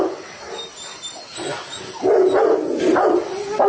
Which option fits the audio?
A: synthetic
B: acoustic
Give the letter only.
B